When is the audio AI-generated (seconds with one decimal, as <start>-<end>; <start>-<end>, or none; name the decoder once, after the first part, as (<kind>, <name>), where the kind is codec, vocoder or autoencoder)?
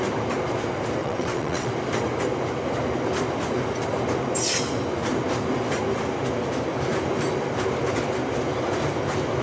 1.0-1.7 (vocoder, WaveNeXt)